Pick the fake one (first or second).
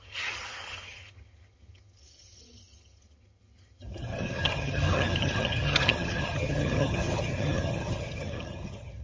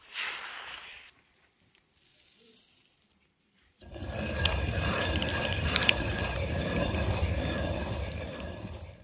first